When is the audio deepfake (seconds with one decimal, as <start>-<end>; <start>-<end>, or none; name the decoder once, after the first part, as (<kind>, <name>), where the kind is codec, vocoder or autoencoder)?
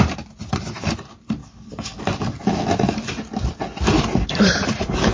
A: 0.0-1.4 (vocoder, BigVGAN v2); 4.3-5.1